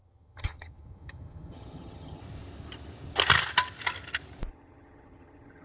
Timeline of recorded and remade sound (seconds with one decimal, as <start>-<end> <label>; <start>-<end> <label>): 0.0-2.2 remade; 2.2-4.5 recorded; 4.5-5.6 remade